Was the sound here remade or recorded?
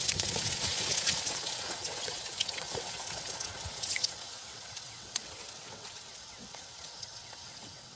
remade